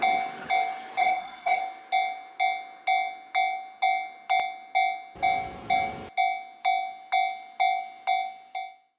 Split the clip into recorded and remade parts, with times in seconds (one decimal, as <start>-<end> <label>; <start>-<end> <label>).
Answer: 0.0-1.0 recorded; 1.0-1.6 remade; 1.6-9.0 recorded